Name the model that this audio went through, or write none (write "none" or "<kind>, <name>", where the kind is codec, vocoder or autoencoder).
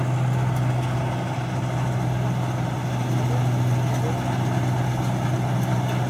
none